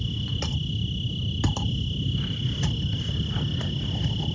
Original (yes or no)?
yes